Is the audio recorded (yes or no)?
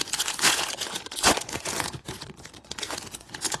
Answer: no